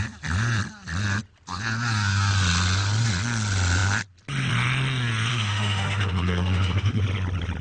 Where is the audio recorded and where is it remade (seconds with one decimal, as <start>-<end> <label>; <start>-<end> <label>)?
0.0-5.3 recorded; 5.3-7.0 remade; 7.0-7.6 recorded